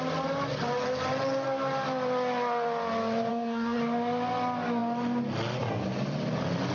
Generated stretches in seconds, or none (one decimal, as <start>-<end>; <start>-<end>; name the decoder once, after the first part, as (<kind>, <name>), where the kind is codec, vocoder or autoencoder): 3.3-3.8 (codec, SNAC)